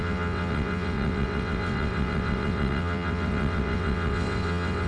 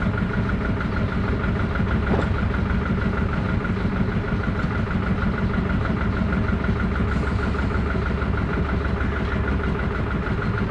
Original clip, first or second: second